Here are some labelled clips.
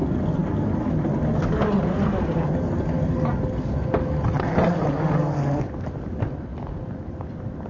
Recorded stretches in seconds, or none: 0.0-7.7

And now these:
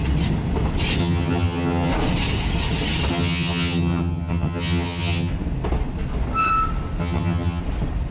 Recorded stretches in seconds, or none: 0.0-1.0; 1.9-3.1; 5.3-7.0; 7.6-8.1